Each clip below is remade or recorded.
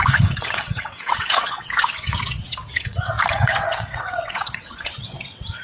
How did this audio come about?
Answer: remade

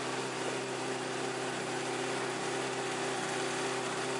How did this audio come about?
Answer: recorded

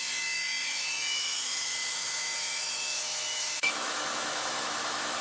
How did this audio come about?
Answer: remade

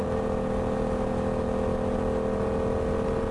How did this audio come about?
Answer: recorded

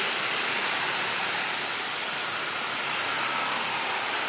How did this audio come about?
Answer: recorded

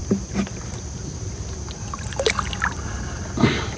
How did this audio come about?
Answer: recorded